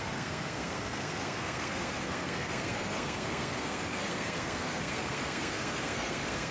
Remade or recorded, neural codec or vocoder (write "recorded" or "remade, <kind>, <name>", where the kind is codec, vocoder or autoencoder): remade, codec, SNAC